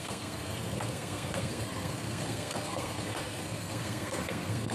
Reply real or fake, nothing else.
fake